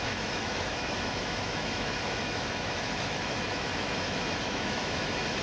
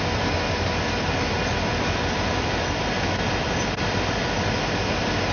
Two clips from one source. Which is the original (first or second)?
second